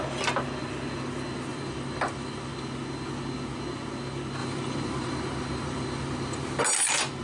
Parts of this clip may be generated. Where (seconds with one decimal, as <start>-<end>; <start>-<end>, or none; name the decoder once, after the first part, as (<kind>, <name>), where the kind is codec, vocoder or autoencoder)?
1.5-2.5 (vocoder, BigVGAN v2); 4.4-6.6